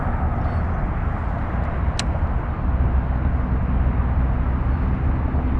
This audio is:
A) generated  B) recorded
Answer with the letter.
B